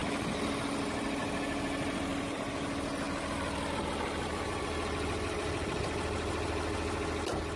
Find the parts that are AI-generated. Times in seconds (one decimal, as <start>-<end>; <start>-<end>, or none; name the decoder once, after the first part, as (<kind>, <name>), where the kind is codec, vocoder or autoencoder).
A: none